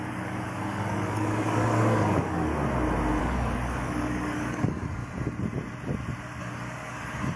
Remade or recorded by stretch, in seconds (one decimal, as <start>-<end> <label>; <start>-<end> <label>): 0.0-2.5 remade; 2.5-3.2 recorded; 3.2-5.0 remade; 5.0-6.4 recorded; 6.4-7.4 remade